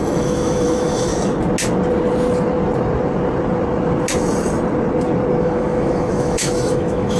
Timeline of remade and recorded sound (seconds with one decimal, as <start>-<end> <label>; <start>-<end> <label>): 0.0-1.1 remade; 1.1-5.4 recorded; 5.4-7.2 remade